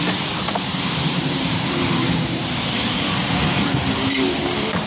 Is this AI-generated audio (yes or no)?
yes